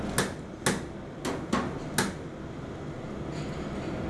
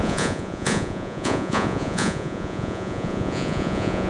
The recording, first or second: first